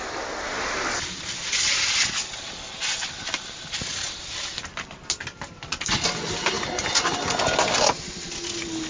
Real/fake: real